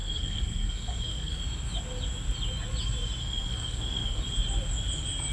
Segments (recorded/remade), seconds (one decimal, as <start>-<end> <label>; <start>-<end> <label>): 0.0-1.4 remade; 1.4-3.2 recorded; 3.2-4.2 remade; 4.2-5.3 recorded

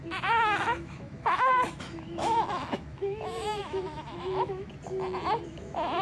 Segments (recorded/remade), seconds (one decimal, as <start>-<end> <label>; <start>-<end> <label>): 0.0-4.7 remade; 4.7-5.5 recorded; 5.5-6.0 remade

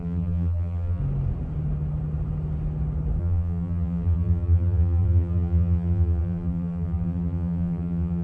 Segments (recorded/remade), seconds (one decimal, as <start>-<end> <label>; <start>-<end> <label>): 0.0-1.0 remade; 1.0-3.2 recorded; 3.2-8.2 remade